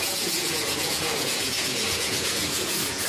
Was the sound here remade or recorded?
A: remade